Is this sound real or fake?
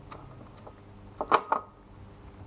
real